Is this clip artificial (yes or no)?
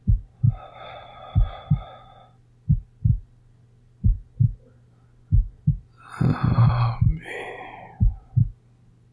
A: no